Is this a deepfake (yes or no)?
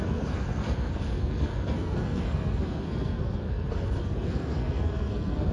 yes